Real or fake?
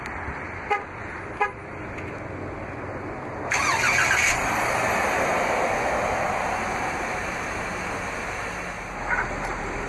real